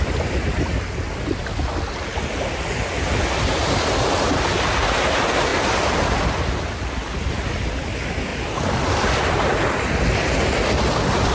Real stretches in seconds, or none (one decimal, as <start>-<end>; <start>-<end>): 0.0-11.3